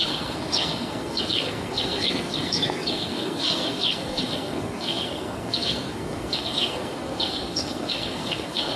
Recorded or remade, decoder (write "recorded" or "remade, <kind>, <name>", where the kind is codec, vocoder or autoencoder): remade, codec, SNAC